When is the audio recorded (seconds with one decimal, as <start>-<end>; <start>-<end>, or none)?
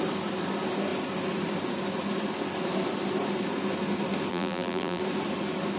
0.0-4.3; 5.0-5.8